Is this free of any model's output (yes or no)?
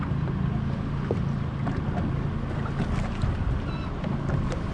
yes